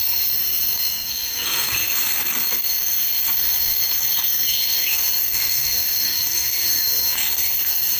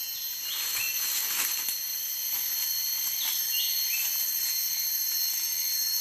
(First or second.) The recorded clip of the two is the second